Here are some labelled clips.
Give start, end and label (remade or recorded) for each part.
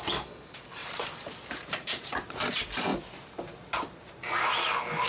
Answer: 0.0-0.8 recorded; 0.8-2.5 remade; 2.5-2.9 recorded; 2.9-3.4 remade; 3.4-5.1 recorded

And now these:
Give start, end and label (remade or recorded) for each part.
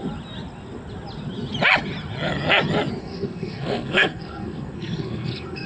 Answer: 0.0-3.0 recorded; 3.0-5.7 remade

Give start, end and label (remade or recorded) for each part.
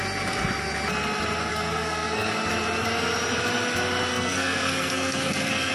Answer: 0.0-1.5 recorded; 1.5-2.3 remade; 2.3-4.1 recorded; 4.1-5.7 remade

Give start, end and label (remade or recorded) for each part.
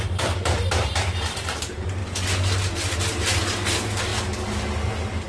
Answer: 0.0-2.0 remade; 2.0-3.0 recorded; 3.0-4.1 remade; 4.1-5.3 recorded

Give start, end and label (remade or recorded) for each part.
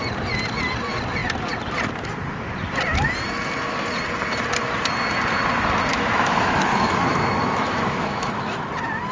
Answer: 0.0-5.9 recorded; 5.9-8.7 remade; 8.7-9.1 recorded